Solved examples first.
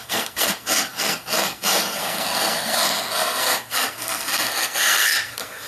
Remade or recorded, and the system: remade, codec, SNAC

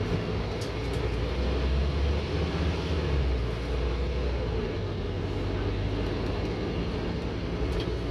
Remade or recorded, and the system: recorded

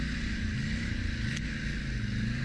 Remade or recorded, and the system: recorded